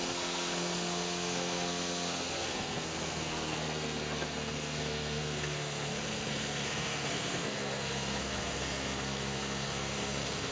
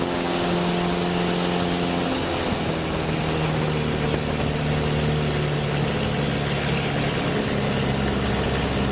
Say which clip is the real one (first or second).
second